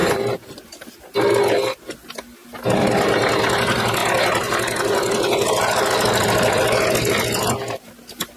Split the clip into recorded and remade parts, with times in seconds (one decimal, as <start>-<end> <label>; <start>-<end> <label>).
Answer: 0.0-1.1 remade; 1.1-8.4 recorded